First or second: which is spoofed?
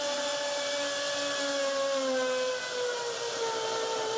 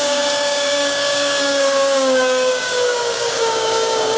second